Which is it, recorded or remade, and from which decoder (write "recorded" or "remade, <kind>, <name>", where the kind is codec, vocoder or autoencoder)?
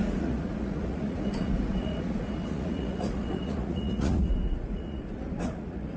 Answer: remade, vocoder, Vocos